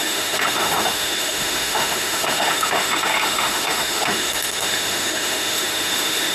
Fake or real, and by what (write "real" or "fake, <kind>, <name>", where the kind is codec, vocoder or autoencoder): fake, autoencoder, DAC-VAE